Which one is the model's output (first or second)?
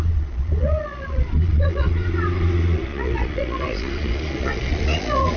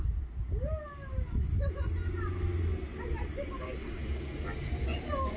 first